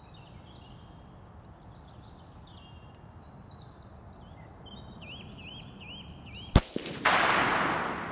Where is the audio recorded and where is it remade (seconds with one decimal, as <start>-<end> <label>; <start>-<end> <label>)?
0.0-8.1 recorded